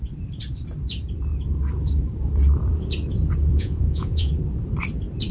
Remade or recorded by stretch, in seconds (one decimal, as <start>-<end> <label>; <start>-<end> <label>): 0.0-3.5 recorded; 3.5-4.3 remade; 4.3-5.3 recorded